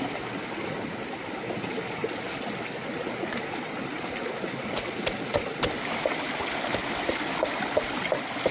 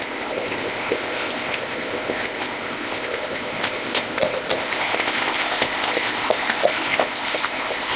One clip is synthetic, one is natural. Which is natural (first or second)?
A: first